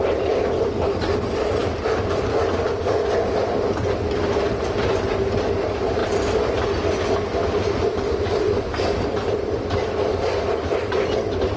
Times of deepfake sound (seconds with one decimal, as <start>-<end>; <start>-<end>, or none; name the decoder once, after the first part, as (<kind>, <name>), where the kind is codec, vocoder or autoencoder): none